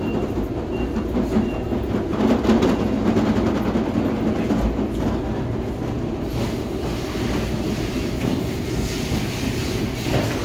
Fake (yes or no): no